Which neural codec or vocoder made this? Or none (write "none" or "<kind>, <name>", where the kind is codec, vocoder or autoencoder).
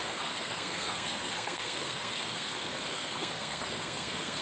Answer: codec, SNAC